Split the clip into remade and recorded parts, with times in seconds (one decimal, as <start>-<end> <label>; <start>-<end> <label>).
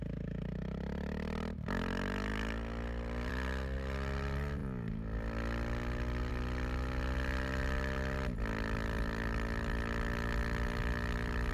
0.0-11.5 recorded